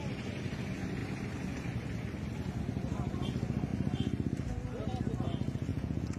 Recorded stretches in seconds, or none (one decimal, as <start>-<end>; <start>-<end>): 0.0-5.7